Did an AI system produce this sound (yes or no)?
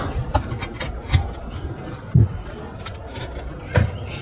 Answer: no